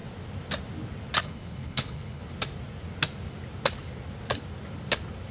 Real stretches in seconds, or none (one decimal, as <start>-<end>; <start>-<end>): 0.0-1.2; 2.2-5.3